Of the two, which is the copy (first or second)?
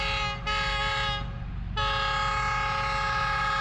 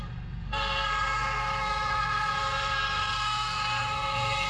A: second